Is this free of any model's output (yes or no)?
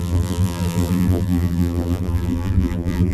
no